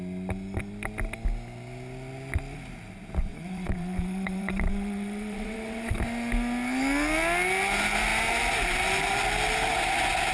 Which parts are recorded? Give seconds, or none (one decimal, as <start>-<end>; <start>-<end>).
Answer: 0.0-3.2; 6.0-10.3